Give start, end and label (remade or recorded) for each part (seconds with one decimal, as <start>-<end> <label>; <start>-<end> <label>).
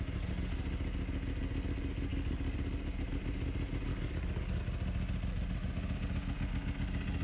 0.0-2.1 recorded; 2.1-2.6 remade; 2.6-3.9 recorded; 3.9-4.6 remade; 4.6-7.2 recorded